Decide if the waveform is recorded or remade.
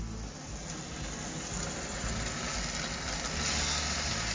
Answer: recorded